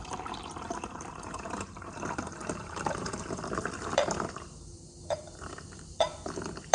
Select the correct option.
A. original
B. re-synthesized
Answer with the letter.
B